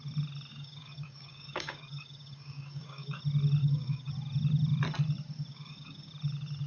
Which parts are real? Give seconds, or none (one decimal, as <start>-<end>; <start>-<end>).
0.0-0.5; 3.2-3.6; 4.1-5.5; 6.1-6.7